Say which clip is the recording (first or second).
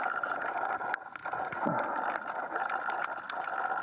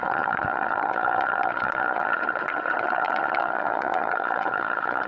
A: first